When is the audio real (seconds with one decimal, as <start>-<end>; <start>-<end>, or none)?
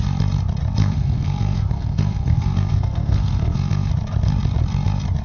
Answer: 0.0-0.8; 3.9-5.2